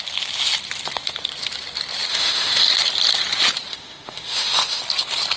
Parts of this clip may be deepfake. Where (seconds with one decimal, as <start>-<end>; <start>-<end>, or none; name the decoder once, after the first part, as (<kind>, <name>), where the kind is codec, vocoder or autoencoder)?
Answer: 2.1-2.7 (autoencoder, DAC-VAE); 3.7-4.8